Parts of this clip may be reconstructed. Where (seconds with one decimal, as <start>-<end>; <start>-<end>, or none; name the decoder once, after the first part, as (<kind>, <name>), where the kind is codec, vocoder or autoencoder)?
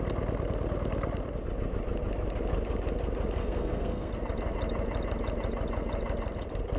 3.4-4.1 (codec, SNAC)